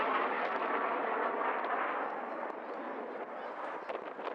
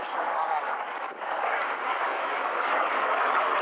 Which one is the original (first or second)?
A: first